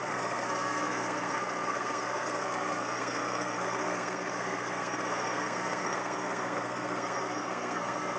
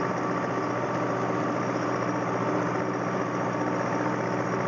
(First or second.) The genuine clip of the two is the second